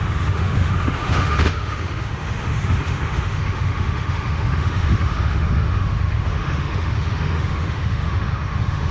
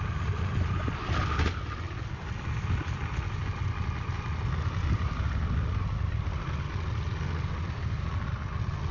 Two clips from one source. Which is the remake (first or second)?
first